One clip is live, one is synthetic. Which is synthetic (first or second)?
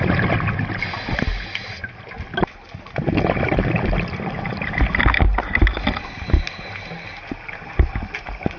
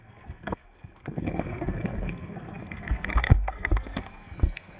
second